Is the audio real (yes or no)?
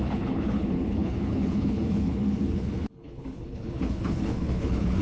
no